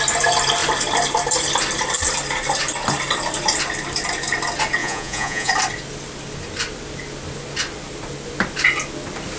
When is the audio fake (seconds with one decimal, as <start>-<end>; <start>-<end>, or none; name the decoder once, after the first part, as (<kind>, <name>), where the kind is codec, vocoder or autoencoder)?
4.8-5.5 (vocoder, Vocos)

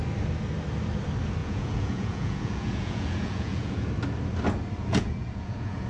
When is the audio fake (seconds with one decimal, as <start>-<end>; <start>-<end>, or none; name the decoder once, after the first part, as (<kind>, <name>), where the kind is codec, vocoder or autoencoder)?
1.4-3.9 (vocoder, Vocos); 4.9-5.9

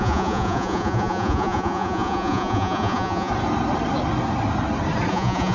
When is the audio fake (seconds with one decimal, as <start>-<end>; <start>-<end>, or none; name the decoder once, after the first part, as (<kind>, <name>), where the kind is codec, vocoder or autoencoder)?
0.0-3.3 (vocoder, Vocos); 5.1-5.5